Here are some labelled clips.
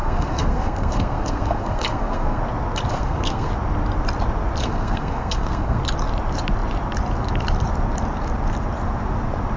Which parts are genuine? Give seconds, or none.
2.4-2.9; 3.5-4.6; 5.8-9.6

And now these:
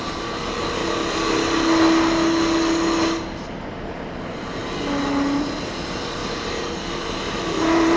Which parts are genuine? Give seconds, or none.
0.8-3.9; 4.6-5.4

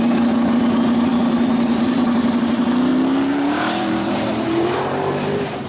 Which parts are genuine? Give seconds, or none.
0.0-1.1; 2.1-3.3

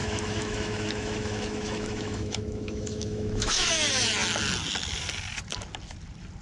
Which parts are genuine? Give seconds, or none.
3.7-6.4

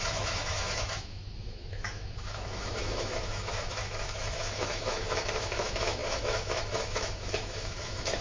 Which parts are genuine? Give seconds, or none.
none

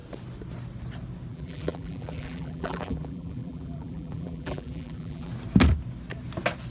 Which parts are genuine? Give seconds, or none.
0.0-1.3; 5.3-6.7